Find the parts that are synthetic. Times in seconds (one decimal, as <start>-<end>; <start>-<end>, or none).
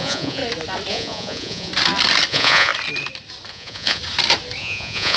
0.0-0.4; 0.9-1.7; 2.3-2.7; 3.5-4.0; 4.6-5.2